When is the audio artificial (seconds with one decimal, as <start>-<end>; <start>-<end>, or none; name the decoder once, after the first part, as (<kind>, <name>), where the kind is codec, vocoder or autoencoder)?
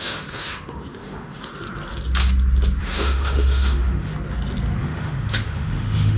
0.0-1.5 (autoencoder, DAC-VAE); 2.8-4.1; 4.8-6.2